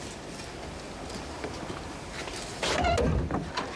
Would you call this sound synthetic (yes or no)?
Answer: no